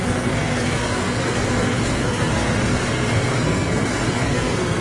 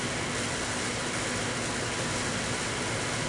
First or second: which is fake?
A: first